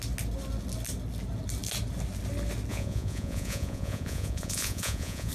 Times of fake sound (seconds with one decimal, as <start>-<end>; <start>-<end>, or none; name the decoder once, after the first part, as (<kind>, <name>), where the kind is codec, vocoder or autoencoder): 2.7-5.3 (vocoder, Vocos)

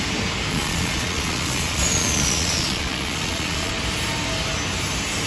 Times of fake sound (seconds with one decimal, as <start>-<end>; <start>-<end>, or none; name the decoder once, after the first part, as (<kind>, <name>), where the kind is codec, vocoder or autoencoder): 0.5-3.7 (vocoder, Vocos)

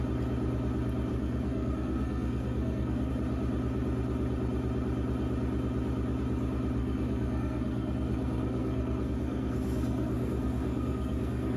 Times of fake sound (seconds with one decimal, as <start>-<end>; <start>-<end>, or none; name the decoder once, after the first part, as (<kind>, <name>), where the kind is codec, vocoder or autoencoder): 1.1-3.1 (codec, SNAC); 6.8-11.6

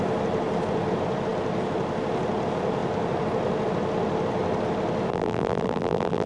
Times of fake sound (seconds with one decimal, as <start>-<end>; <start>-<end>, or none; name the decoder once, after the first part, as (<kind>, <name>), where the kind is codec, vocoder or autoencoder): 5.1-6.3 (vocoder, BigVGAN v2)